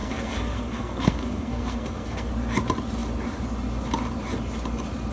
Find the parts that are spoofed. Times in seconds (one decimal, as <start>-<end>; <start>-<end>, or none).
0.0-2.3